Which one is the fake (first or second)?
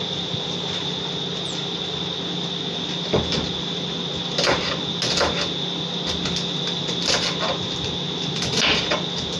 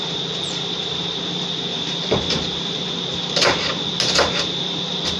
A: second